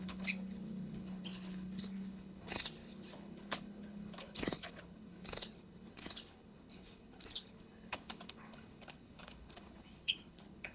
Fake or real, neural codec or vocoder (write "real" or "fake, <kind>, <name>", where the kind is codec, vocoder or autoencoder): fake, codec, HILCodec